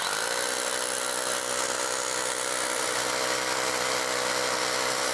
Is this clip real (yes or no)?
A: yes